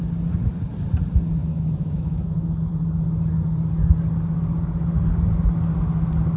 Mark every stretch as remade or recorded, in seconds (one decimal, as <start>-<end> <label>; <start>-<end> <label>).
0.0-1.4 recorded; 1.4-2.7 remade; 2.7-6.4 recorded